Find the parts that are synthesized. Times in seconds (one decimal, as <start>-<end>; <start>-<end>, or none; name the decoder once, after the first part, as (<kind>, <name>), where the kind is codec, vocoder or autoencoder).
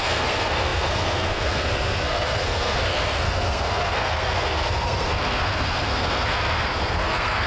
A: 0.0-7.5 (codec, SNAC)